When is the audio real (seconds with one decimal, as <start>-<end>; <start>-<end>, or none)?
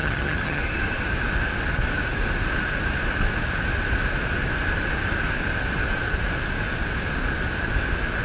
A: 0.6-8.2